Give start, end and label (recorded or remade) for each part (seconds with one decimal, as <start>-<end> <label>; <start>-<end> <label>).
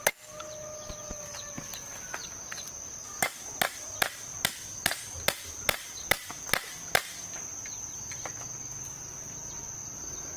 0.0-10.4 recorded